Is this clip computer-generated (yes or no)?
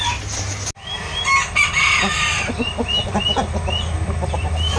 no